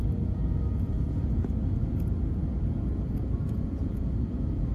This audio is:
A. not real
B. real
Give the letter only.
A